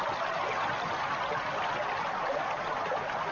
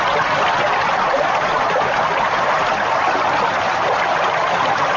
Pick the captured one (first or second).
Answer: first